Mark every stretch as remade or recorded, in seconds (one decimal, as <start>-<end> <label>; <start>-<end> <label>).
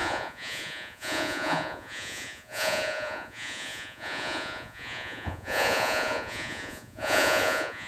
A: 0.0-7.9 remade